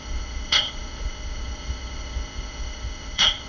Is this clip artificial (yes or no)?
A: yes